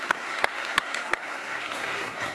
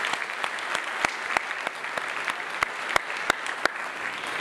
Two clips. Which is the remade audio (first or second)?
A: first